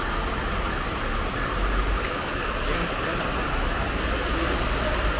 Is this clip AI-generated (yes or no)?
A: no